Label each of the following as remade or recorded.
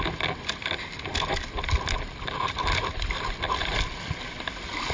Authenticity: recorded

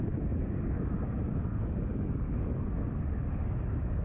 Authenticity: recorded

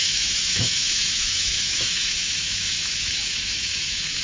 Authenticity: remade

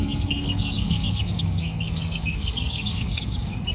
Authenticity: remade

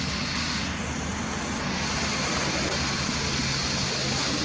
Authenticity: recorded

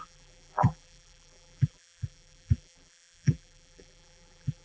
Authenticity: remade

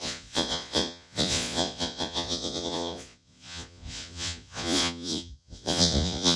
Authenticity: remade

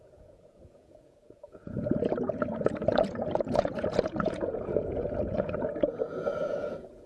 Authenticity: remade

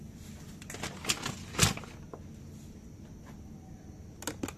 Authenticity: recorded